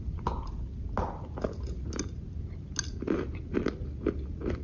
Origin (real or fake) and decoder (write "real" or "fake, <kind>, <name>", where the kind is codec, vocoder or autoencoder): real